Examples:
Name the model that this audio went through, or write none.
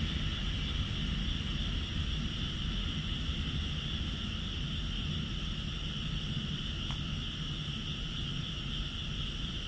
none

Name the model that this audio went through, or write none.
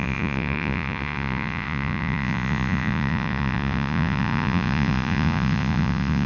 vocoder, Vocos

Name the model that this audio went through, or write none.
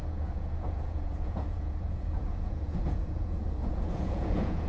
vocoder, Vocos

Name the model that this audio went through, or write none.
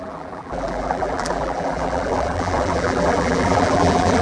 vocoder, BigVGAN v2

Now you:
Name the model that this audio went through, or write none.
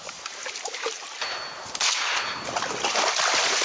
none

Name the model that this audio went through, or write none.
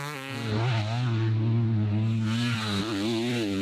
none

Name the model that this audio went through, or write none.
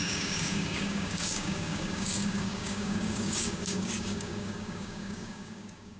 codec, DAC